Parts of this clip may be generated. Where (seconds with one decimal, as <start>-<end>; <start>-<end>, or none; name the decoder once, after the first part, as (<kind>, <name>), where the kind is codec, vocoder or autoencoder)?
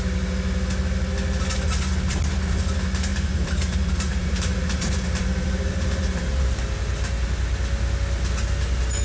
3.1-6.3 (vocoder, BigVGAN v2)